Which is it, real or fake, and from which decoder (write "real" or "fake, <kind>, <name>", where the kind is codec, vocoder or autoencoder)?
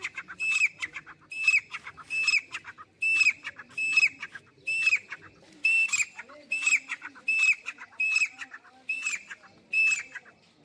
real